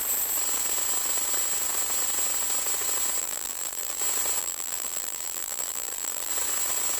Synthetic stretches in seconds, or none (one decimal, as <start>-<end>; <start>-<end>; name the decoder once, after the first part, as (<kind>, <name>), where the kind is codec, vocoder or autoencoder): 3.2-4.0 (vocoder, BigVGAN v2); 4.4-6.3